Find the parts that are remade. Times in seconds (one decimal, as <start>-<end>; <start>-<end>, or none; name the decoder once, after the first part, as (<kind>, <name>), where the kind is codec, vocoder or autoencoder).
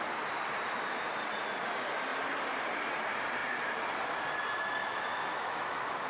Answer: 4.8-6.1 (autoencoder, DAC-VAE)